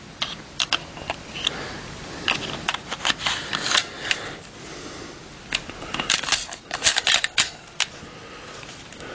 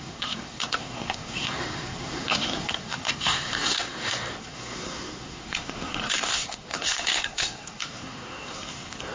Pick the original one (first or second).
first